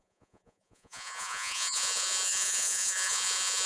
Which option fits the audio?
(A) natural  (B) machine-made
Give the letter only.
B